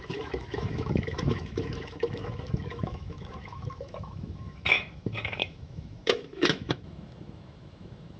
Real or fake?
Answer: fake